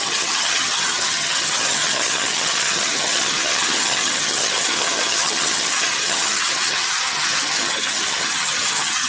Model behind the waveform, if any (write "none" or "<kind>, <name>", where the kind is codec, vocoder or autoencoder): vocoder, HiFi-GAN